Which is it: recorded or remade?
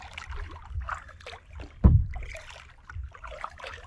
recorded